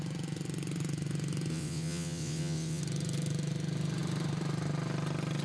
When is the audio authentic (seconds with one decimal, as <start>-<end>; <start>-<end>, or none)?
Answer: 0.0-1.5; 2.8-5.4